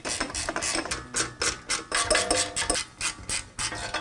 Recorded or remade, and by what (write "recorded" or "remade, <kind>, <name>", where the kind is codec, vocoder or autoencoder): recorded